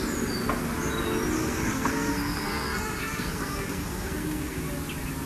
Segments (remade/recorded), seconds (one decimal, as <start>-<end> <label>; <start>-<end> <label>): 0.0-1.4 recorded; 1.4-4.6 remade; 4.6-5.3 recorded